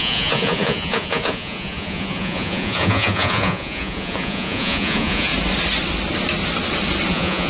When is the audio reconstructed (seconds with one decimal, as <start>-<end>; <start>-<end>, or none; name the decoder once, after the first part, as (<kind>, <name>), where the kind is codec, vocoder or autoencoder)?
0.0-5.3 (vocoder, Vocos); 7.1-7.5